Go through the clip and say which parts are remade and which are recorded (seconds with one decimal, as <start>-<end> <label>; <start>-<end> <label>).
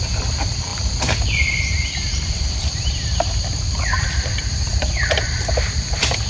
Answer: 0.0-6.3 remade